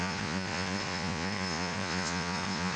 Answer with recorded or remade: remade